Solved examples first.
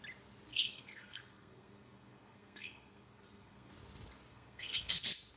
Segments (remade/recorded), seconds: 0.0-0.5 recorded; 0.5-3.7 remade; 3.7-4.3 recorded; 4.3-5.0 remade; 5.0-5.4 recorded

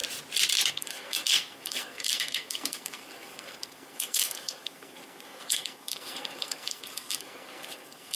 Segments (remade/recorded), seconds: 0.0-0.7 recorded; 0.7-8.2 remade